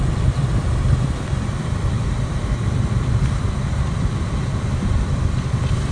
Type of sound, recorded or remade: remade